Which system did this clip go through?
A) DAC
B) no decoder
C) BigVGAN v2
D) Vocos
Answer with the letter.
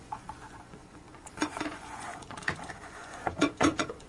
D